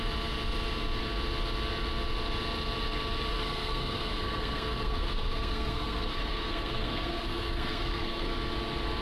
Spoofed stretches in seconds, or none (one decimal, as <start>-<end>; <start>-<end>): 3.4-8.3